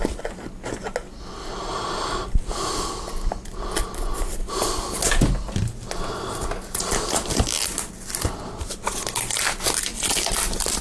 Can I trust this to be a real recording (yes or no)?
yes